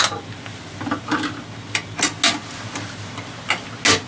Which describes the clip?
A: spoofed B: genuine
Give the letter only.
B